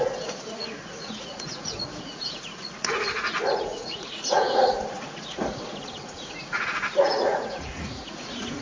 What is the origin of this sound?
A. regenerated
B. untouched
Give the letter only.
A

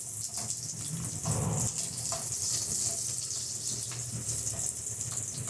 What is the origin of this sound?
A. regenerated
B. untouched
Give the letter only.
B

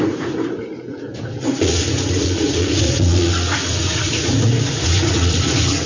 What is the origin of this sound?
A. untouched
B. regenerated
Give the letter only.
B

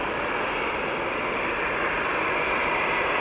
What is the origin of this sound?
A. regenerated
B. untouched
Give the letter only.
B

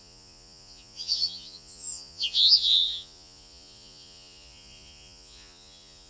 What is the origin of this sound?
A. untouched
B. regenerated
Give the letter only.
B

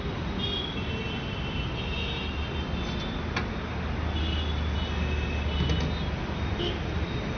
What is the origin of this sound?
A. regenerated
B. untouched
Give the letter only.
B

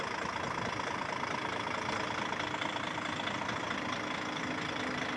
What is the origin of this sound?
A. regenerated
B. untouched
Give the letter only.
B